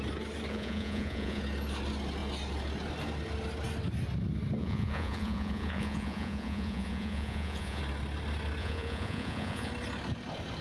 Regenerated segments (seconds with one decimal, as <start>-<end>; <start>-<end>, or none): 0.5-1.4; 4.6-7.8; 8.6-9.7